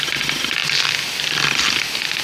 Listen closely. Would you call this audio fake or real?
real